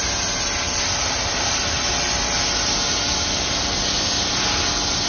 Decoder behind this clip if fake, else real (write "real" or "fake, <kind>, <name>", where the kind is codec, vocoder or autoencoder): real